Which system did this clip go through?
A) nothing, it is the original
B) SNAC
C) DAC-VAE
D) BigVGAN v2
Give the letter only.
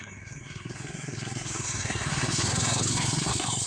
B